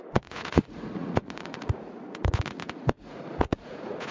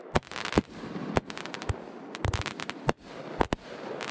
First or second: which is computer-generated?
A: first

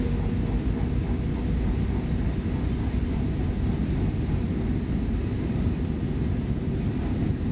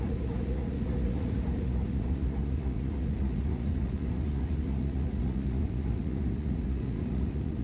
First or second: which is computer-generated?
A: second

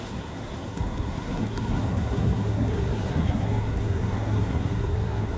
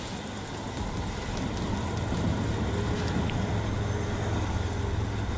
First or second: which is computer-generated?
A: first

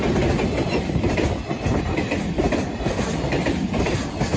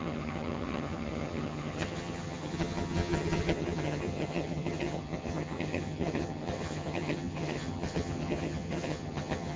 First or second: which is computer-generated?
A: second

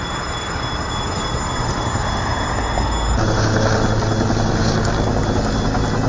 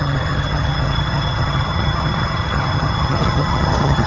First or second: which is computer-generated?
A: second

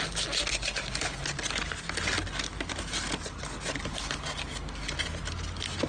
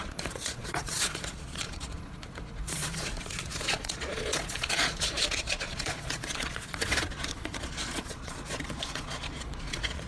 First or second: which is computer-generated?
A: second